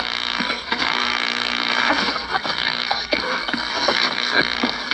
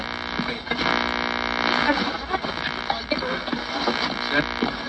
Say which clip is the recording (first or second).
second